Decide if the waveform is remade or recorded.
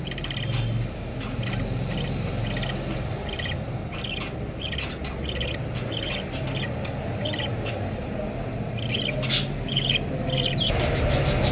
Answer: recorded